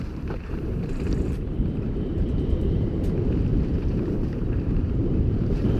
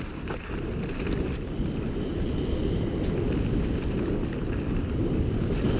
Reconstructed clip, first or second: first